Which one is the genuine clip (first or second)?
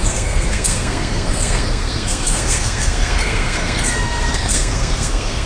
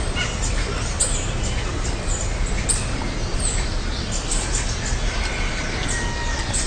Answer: second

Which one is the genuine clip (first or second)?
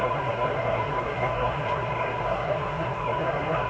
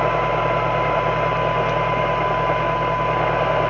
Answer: second